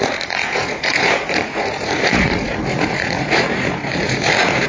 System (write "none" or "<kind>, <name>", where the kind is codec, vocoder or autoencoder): vocoder, Vocos